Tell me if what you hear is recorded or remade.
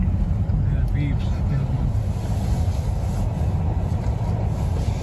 recorded